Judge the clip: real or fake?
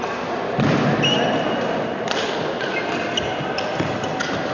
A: real